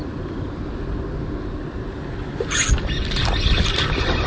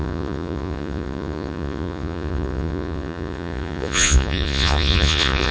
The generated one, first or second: second